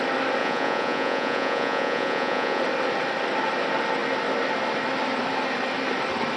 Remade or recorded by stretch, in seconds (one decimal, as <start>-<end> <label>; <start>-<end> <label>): 0.0-0.4 recorded; 0.4-2.6 remade; 2.6-6.4 recorded